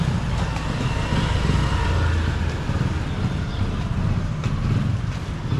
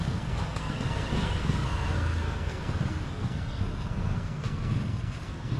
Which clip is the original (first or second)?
first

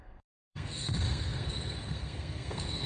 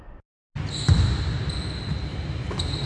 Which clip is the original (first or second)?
second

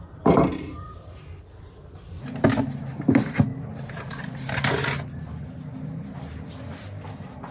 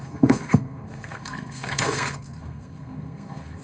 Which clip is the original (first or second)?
first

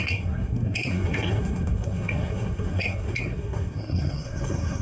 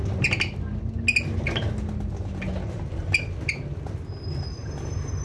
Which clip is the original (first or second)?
second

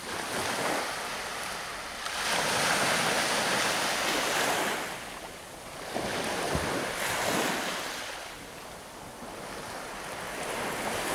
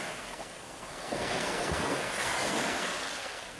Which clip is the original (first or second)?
first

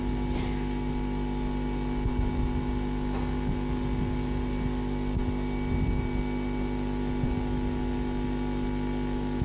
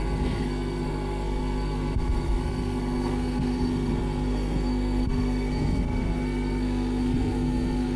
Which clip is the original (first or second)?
first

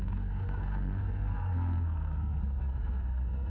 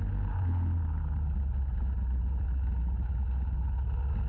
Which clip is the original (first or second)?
second